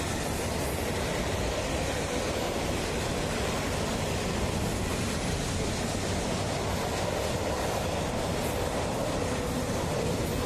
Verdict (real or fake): real